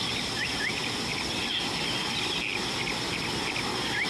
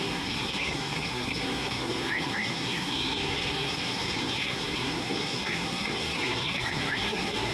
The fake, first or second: second